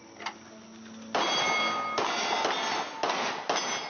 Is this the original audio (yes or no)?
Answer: yes